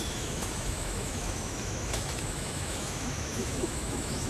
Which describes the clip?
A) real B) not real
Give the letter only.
B